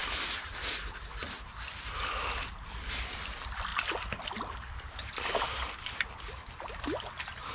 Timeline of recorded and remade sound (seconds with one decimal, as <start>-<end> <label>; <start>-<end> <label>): 0.0-7.5 recorded